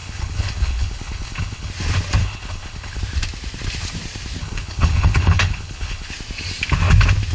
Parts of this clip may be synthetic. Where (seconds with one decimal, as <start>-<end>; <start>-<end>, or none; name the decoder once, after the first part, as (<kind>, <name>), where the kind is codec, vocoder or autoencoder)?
0.0-1.7 (codec, HILCodec); 2.2-3.0; 4.4-6.1